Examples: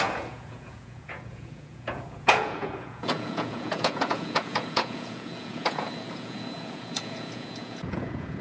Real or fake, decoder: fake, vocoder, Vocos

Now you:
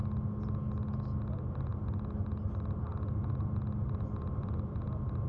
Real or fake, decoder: real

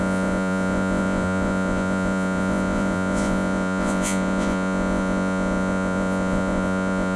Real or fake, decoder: fake, vocoder, Vocos